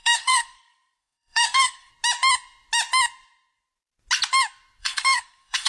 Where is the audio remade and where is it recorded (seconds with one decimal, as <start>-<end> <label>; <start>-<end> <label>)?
0.0-1.9 remade; 1.9-4.8 recorded; 4.8-5.7 remade